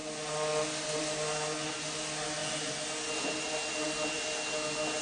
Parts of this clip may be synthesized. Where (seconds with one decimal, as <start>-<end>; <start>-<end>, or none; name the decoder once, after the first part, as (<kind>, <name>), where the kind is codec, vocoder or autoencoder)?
none